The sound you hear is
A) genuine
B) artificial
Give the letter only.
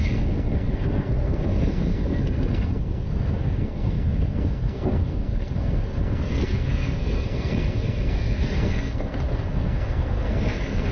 B